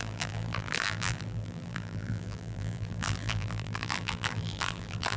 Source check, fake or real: fake